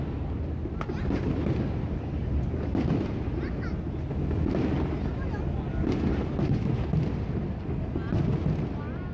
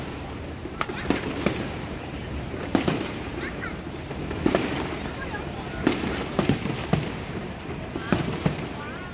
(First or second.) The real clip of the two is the first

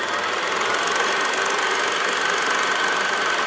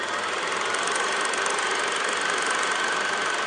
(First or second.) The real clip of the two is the first